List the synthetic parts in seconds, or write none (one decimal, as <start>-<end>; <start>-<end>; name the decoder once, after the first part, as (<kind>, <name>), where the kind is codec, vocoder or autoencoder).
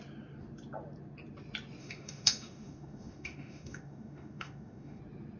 1.8-5.0 (autoencoder, DAC-VAE)